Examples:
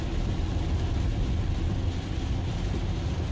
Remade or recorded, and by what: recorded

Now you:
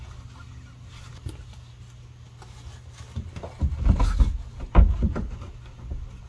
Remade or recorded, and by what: recorded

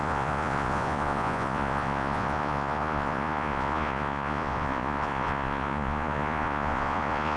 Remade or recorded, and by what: remade, vocoder, Vocos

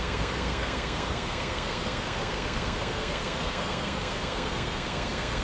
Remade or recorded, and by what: remade, codec, SNAC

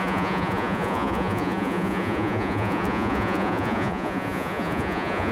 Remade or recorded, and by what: remade, vocoder, Vocos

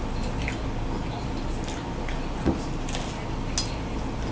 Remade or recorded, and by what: recorded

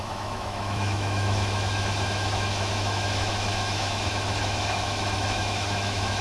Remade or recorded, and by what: remade, autoencoder, DAC-VAE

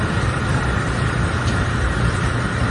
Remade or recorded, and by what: remade, vocoder, BigVGAN v2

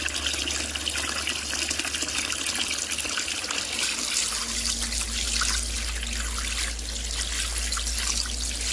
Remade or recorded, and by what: recorded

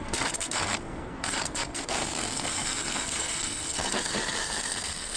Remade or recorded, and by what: remade, codec, SNAC